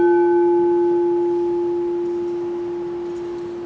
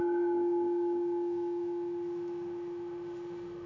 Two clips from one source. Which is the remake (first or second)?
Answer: second